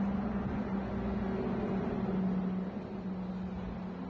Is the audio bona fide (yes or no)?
yes